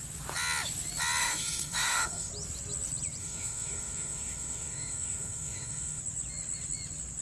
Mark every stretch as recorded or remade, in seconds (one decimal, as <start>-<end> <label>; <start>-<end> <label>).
0.0-1.2 recorded; 1.2-2.3 remade; 2.3-3.2 recorded; 3.2-6.0 remade; 6.0-7.2 recorded